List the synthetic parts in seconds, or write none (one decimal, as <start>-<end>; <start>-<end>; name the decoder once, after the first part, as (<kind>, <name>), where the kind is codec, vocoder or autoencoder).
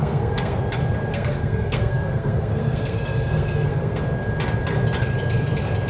0.0-0.6 (codec, SNAC); 1.1-4.0